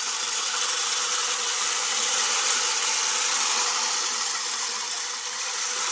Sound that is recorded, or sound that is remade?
remade